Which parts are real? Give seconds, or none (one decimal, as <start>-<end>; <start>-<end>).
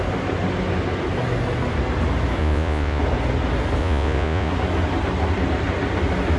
0.0-2.4; 3.0-3.8; 4.5-6.4